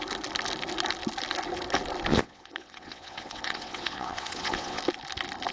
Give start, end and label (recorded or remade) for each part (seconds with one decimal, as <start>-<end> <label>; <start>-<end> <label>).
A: 0.0-2.1 recorded; 2.1-4.8 remade; 4.8-5.5 recorded